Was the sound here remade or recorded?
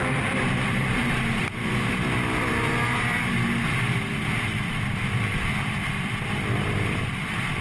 remade